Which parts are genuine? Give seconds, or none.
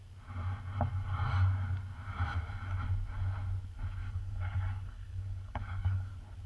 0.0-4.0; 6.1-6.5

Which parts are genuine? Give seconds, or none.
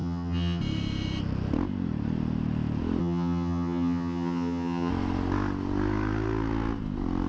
0.6-3.0; 4.9-7.3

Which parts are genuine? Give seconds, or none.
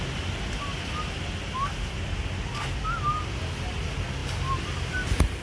0.0-5.4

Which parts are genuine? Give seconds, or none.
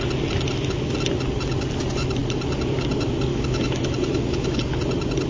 0.0-3.3; 4.6-5.3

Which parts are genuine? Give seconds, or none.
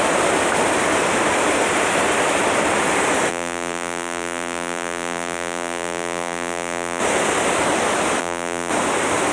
0.0-3.3; 7.0-8.2; 8.7-9.3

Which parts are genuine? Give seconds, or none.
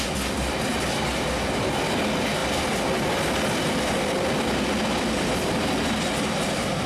0.0-6.9